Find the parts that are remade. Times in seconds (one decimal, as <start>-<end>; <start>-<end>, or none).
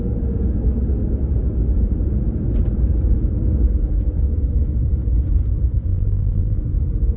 5.9-6.6